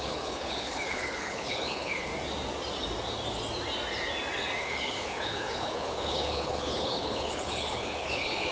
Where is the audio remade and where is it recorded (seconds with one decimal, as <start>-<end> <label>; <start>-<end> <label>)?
0.0-2.1 remade; 2.1-4.6 recorded; 4.6-8.5 remade